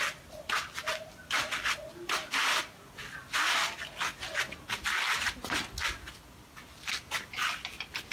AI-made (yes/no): no